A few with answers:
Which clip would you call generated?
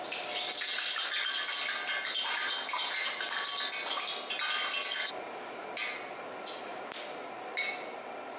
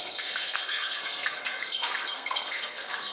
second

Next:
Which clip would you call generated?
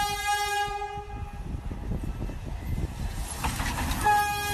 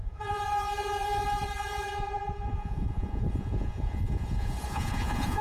second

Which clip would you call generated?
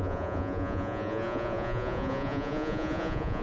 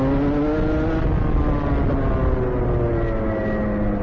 first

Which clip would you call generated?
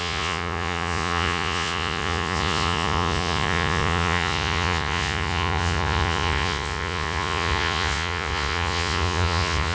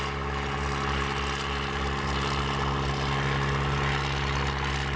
first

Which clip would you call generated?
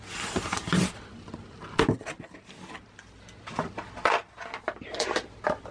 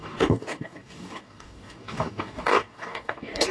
second